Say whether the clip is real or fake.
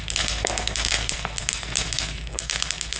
fake